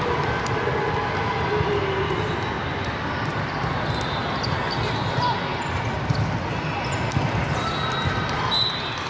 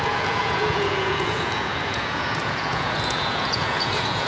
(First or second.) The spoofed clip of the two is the second